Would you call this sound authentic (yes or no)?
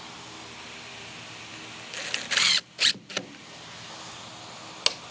yes